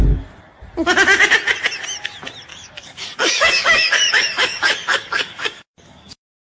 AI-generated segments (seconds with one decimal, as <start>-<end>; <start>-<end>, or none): 2.5-6.4